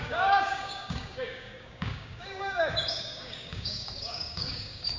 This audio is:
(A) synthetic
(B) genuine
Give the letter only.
A